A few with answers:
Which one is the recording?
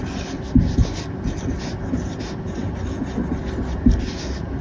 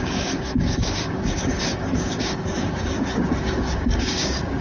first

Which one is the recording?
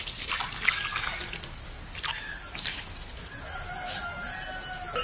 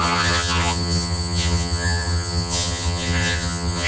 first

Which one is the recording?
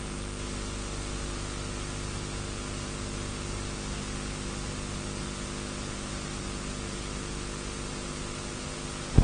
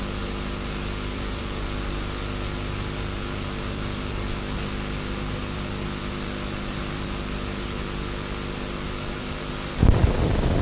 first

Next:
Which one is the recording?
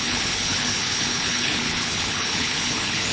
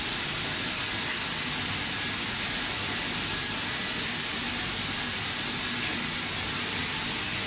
second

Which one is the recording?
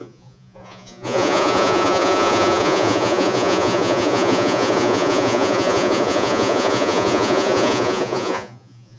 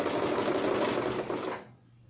second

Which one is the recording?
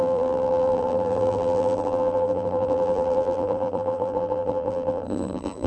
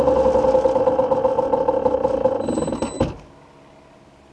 second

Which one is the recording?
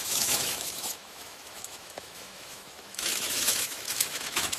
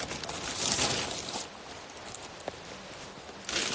second